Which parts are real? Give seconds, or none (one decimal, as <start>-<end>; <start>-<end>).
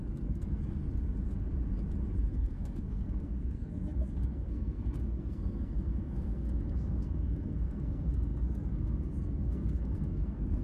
0.8-2.1